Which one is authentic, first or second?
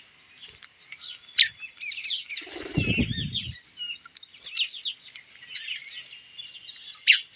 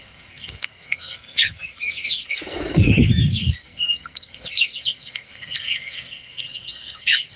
first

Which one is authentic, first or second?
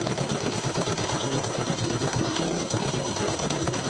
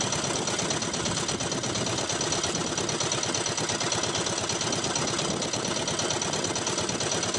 second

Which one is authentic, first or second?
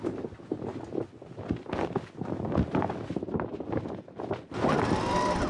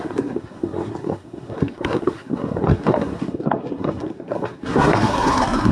first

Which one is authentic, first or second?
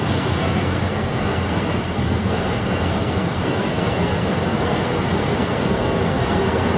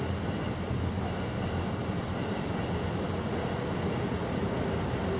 second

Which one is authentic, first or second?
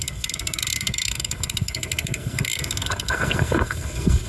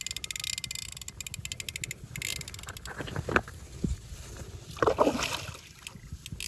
second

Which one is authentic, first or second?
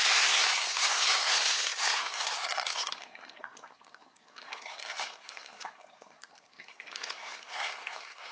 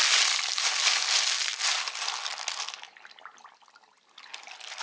second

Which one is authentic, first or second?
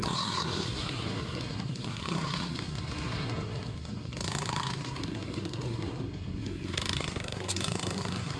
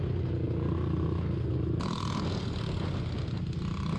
second